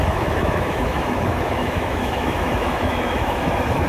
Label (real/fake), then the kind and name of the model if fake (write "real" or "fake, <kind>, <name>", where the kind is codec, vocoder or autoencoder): fake, autoencoder, DAC-VAE